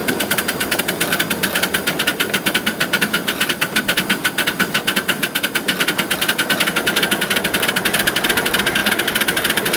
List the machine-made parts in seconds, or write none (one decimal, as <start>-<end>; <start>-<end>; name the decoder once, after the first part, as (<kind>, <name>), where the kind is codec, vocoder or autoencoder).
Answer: 0.0-0.8 (vocoder, BigVGAN v2); 2.1-3.8; 8.8-9.8